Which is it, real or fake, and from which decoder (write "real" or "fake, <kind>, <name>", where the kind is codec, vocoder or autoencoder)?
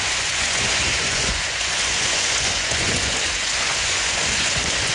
fake, vocoder, Vocos